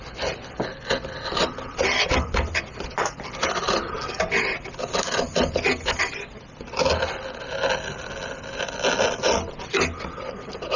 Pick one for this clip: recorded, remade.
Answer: recorded